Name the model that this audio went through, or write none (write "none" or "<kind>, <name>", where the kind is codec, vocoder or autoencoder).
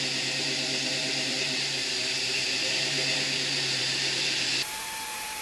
vocoder, BigVGAN v2